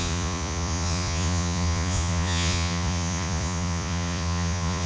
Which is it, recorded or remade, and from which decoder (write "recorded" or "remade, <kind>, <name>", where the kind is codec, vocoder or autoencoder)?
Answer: remade, vocoder, Vocos